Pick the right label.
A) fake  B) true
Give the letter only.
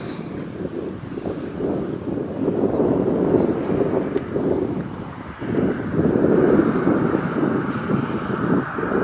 B